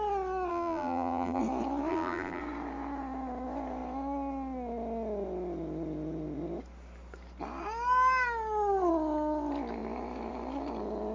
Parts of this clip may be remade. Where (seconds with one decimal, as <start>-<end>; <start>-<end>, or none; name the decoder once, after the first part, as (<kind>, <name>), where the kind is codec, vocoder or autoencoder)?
0.5-1.4 (vocoder, BigVGAN v2); 1.9-2.4